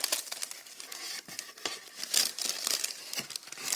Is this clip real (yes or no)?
yes